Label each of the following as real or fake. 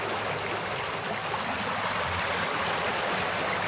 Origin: real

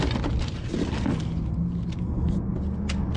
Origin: real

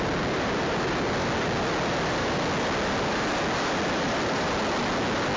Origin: real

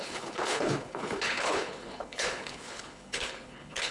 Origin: fake